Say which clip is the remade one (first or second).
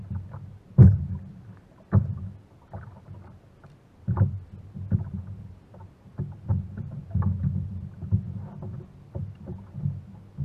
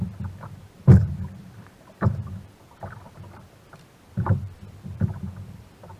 second